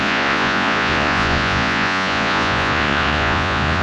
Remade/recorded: remade